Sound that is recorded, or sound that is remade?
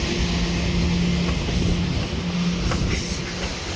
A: recorded